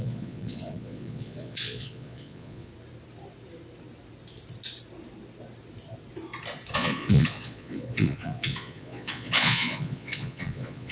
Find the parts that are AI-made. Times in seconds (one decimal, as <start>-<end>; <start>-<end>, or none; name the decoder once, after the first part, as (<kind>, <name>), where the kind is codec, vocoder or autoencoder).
0.0-2.7 (vocoder, Vocos); 6.7-10.9